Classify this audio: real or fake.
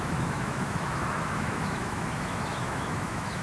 fake